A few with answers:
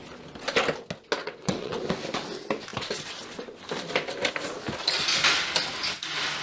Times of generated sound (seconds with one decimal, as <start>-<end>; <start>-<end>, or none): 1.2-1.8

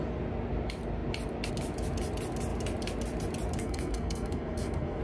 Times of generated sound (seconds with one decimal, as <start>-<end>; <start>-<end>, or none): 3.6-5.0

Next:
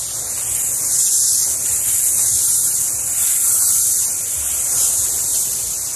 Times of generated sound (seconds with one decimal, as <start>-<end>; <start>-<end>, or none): none

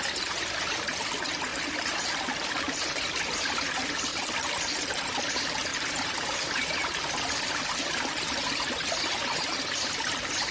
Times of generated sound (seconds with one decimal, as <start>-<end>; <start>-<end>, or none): 4.1-4.9; 5.7-7.5